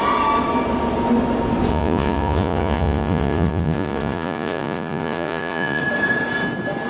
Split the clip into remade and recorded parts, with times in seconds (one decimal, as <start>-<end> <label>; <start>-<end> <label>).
0.0-1.7 recorded; 1.7-5.8 remade; 5.8-6.9 recorded